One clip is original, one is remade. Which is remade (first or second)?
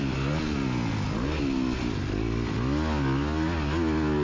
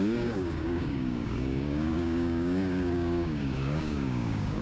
second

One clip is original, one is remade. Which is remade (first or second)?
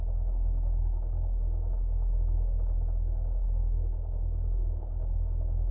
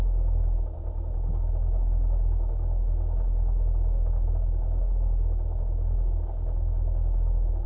first